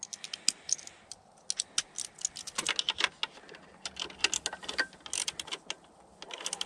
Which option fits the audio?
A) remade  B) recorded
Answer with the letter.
B